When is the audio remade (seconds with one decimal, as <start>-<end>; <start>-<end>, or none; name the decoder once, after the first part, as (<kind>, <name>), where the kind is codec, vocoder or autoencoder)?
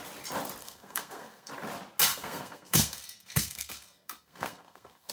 0.6-1.5 (codec, SNAC); 2.1-5.1